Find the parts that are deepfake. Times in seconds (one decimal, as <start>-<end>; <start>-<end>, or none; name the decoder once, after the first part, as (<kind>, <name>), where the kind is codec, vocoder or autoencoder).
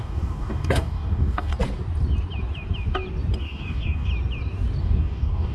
0.0-1.5 (codec, DAC); 3.4-4.1; 4.8-5.5